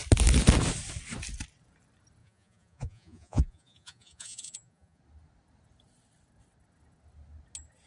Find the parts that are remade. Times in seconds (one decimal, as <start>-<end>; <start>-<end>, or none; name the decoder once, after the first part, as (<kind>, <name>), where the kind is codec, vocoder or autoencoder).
2.2-5.0 (vocoder, Vocos)